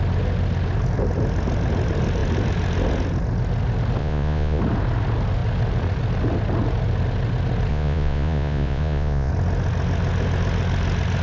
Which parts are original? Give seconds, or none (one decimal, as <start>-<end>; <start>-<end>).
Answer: 0.0-4.0; 4.6-7.7; 9.3-11.2